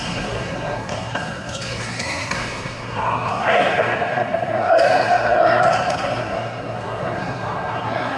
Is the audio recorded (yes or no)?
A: no